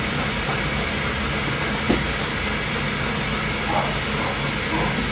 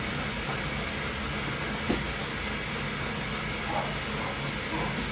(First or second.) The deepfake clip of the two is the first